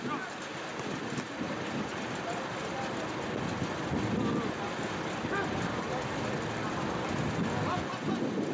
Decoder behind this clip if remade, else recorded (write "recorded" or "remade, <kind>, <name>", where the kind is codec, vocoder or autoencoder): recorded